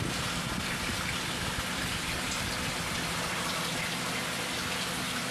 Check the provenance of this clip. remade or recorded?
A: remade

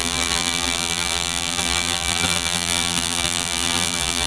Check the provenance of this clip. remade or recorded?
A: remade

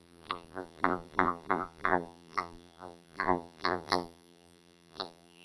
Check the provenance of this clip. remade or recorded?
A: remade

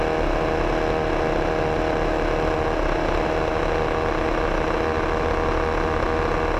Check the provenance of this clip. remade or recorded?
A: recorded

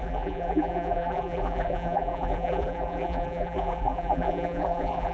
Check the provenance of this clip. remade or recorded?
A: remade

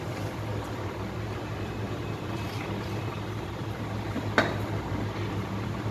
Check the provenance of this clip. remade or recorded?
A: remade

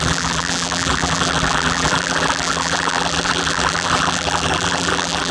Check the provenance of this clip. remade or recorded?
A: remade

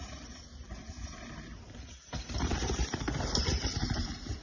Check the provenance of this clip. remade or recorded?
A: remade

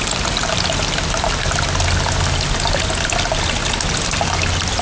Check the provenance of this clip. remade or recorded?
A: recorded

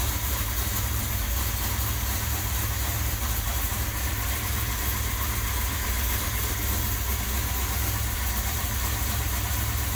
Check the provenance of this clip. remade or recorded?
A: remade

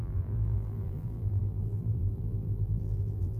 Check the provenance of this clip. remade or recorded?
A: remade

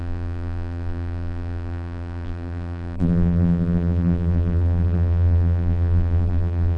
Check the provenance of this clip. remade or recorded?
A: remade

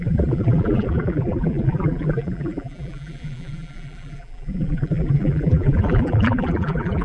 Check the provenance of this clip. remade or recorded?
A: remade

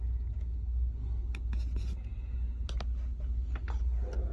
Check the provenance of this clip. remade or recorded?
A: recorded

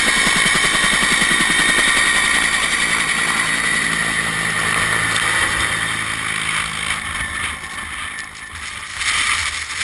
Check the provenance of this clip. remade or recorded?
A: recorded